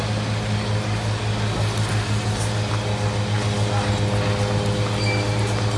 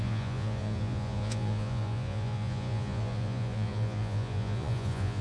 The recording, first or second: first